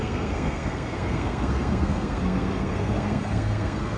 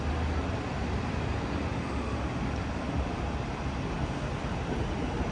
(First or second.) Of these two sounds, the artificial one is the first